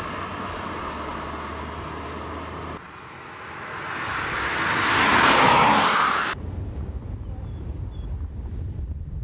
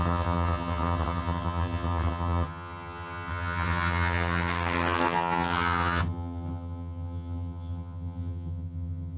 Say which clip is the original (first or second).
first